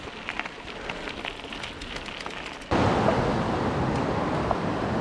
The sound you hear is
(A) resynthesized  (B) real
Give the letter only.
B